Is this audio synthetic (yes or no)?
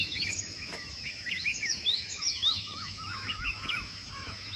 yes